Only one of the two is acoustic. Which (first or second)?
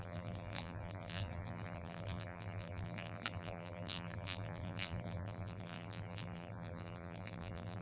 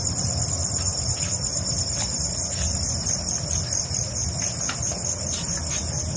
second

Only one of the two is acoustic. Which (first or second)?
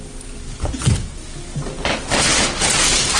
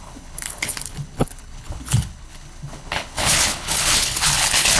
first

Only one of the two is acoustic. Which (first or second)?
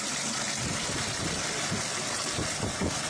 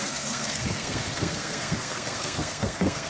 first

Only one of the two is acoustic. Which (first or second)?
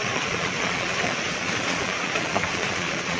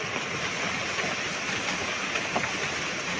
second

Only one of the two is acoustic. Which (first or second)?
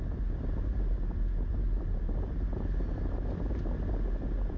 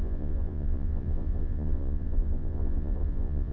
first